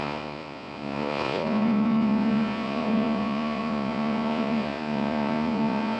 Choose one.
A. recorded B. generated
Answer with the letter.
B